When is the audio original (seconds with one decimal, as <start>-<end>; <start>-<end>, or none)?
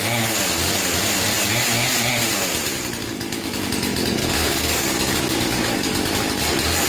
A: 0.0-3.0; 3.7-4.2; 6.4-6.9